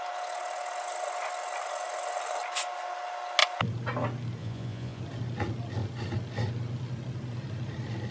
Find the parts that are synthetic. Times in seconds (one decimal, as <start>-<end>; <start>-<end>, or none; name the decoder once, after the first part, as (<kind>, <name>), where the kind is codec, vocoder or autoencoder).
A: 4.4-5.0 (vocoder, Vocos)